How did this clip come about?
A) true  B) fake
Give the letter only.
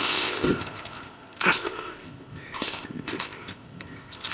B